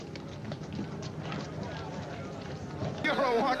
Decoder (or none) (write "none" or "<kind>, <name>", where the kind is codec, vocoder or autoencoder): none